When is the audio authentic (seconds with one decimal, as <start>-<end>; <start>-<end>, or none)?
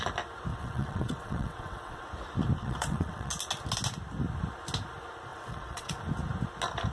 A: 0.0-0.5; 2.1-2.6; 3.3-5.3; 6.0-6.9